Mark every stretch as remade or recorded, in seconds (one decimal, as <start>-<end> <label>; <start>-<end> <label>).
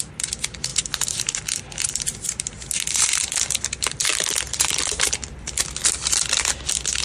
0.0-4.1 recorded; 4.1-5.6 remade; 5.6-7.0 recorded